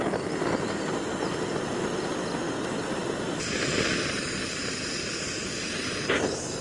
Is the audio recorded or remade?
recorded